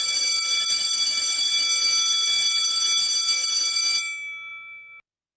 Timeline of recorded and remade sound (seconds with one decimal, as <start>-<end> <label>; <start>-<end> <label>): 0.0-5.4 recorded